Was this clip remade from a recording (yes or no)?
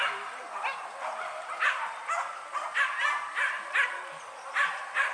no